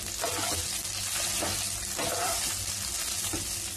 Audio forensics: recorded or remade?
recorded